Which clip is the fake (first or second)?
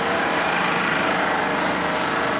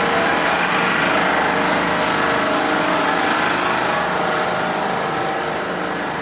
first